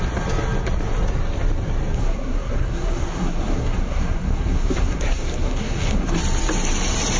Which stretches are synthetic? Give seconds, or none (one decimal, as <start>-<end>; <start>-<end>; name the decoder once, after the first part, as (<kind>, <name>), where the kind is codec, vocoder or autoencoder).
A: 1.9-6.2 (codec, SNAC)